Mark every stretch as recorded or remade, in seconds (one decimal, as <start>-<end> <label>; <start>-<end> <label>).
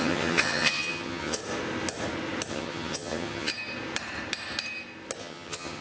0.0-1.4 remade; 1.4-2.5 recorded; 2.5-3.5 remade; 3.5-5.2 recorded; 5.2-5.8 remade